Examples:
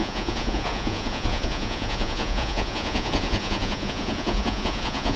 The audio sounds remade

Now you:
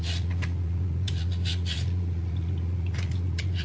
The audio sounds remade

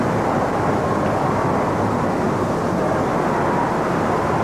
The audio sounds recorded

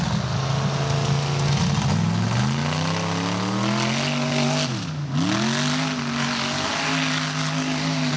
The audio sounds recorded